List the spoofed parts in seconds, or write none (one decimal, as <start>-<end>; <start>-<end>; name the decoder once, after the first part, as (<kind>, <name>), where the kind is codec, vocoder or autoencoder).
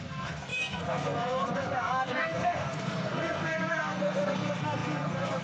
0.0-5.4 (codec, SNAC)